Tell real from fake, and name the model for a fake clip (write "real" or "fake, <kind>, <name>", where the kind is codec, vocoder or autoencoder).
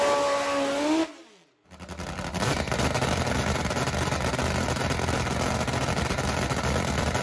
real